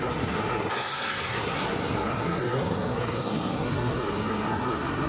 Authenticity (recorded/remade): remade